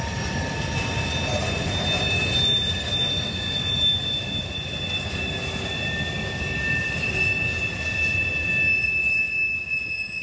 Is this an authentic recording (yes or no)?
yes